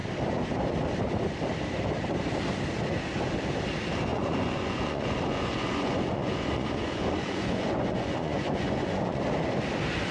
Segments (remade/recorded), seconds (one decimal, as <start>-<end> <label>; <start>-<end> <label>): 0.0-4.1 recorded; 4.1-9.2 remade; 9.2-10.1 recorded